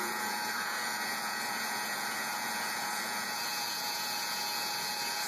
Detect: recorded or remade remade